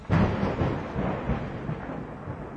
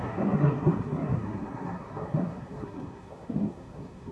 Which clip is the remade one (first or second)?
second